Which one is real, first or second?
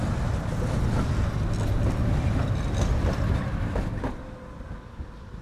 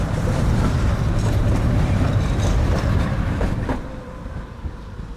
first